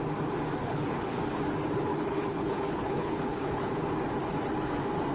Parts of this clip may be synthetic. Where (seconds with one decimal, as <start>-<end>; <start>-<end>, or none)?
0.6-1.2; 1.9-3.9